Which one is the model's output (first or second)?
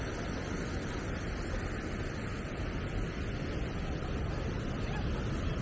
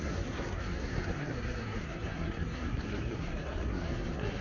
second